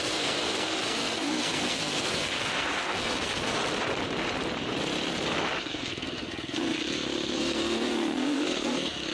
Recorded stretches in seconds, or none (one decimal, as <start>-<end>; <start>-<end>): 3.6-5.6